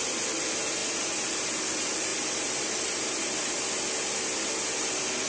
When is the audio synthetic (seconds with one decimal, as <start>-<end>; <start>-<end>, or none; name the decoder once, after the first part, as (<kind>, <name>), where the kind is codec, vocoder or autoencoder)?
2.1-3.7 (vocoder, BigVGAN v2)